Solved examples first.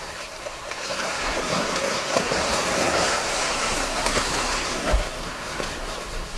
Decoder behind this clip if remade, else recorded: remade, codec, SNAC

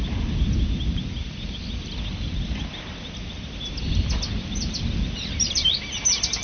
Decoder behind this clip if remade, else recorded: recorded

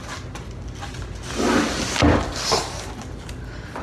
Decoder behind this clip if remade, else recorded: recorded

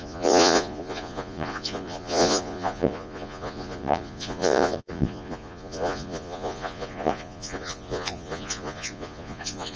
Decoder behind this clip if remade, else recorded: remade, vocoder, Vocos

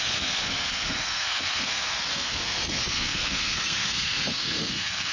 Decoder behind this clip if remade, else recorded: remade, codec, SNAC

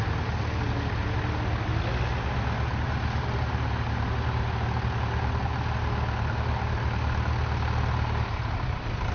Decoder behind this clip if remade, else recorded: recorded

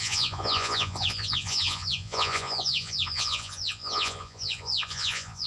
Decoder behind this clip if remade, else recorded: remade, vocoder, Vocos